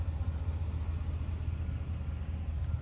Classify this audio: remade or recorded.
recorded